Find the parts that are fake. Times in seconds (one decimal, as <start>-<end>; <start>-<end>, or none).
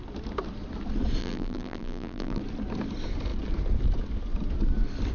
1.2-2.4